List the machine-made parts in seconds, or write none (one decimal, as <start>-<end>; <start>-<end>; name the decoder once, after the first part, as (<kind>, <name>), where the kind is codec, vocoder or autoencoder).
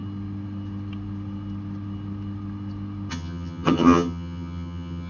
3.1-5.1 (vocoder, HiFi-GAN)